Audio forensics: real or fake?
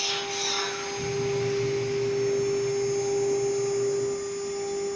real